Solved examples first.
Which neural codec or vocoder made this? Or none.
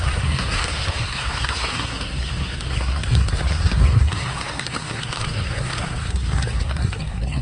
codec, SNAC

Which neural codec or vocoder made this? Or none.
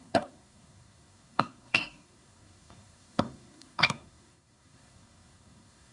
codec, SNAC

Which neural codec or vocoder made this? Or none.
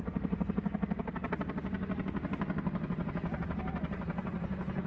none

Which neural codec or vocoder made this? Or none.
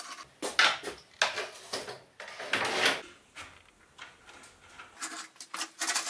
none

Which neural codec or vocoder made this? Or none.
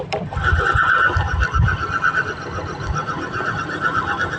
none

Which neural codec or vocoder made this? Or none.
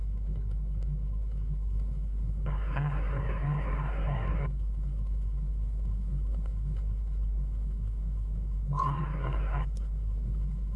codec, SNAC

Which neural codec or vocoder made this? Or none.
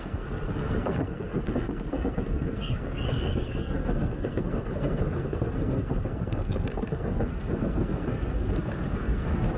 codec, SNAC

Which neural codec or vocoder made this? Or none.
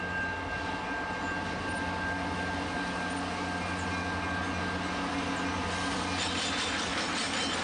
none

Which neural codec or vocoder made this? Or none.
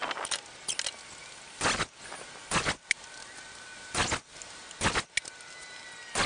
none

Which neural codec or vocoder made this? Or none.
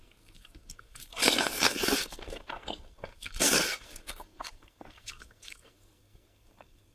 codec, SNAC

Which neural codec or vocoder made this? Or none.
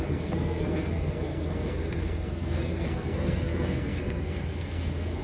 codec, SNAC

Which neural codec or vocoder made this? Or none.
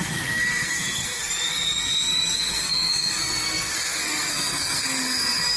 codec, SNAC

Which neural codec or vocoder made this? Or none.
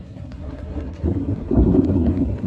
codec, SNAC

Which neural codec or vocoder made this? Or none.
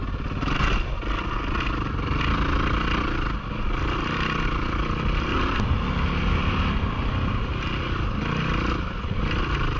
none